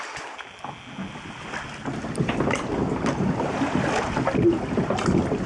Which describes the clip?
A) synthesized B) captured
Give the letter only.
B